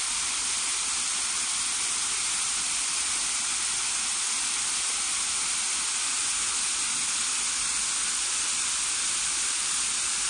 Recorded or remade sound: recorded